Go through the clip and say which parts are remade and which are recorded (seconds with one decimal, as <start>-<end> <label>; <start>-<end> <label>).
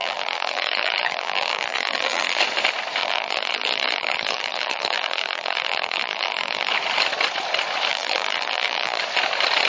0.0-2.4 remade; 2.4-3.0 recorded; 3.0-6.7 remade; 6.7-7.9 recorded; 7.9-9.0 remade; 9.0-9.7 recorded